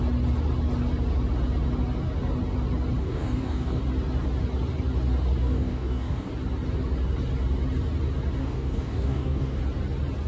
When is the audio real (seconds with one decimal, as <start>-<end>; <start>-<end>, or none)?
0.0-3.0; 3.8-5.4; 6.3-8.4; 9.6-10.3